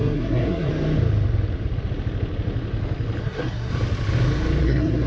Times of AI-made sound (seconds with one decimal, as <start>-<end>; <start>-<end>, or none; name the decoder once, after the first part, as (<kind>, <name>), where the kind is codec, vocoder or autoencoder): 0.0-0.7 (codec, SNAC); 3.2-3.7; 4.6-5.1